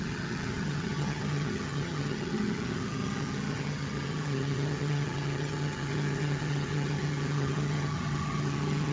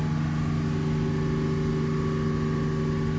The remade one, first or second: first